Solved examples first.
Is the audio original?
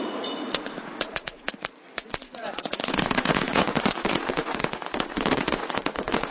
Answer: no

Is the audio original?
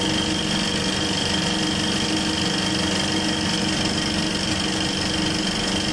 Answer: yes